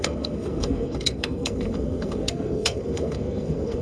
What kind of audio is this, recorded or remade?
remade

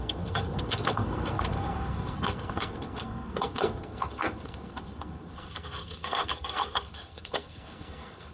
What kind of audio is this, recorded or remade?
remade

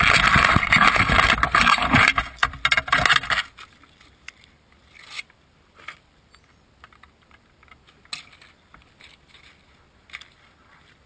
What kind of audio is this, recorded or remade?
recorded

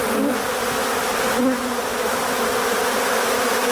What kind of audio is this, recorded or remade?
recorded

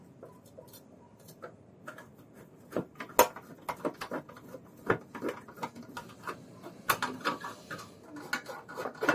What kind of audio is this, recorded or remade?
recorded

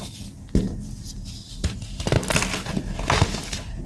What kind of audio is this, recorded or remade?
recorded